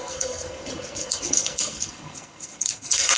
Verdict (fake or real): fake